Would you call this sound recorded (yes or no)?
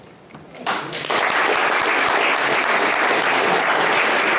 yes